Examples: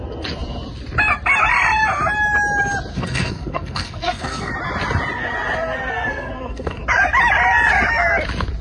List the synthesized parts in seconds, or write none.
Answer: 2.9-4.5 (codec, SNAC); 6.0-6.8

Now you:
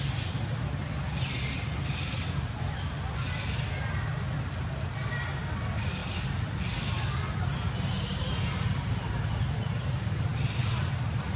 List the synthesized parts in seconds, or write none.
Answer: none

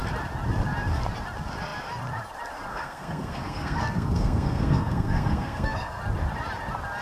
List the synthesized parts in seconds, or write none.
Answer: 2.7-6.0 (codec, SNAC)

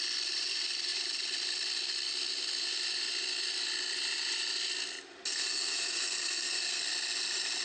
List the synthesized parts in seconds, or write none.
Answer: 5.3-6.8 (codec, SNAC)

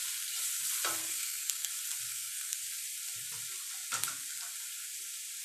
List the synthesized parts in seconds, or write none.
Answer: 1.0-1.7 (codec, SNAC); 2.1-2.6